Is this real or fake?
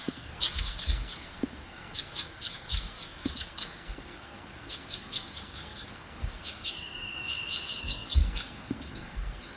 fake